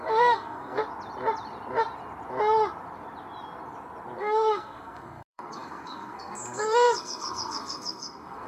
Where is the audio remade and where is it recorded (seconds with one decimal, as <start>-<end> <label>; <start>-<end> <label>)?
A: 0.0-0.8 remade; 0.8-4.2 recorded; 4.2-8.5 remade